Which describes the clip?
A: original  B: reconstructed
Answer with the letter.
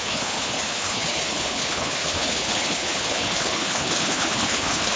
B